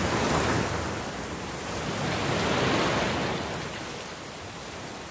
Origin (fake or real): real